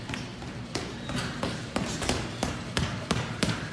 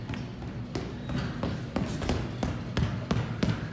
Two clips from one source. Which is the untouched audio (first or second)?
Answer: second